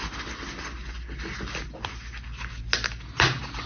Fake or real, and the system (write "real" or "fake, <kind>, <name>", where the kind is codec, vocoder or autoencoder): real